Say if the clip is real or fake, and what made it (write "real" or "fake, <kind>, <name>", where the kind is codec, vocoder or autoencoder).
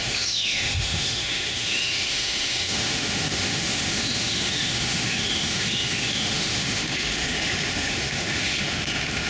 fake, autoencoder, DAC-VAE